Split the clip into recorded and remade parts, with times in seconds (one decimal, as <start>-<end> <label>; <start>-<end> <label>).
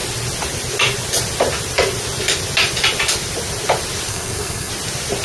0.0-4.1 recorded; 4.1-4.7 remade; 4.7-5.2 recorded